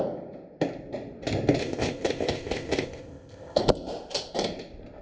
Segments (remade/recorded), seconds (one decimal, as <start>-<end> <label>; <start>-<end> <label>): 0.0-1.6 recorded; 1.6-3.6 remade; 3.6-5.0 recorded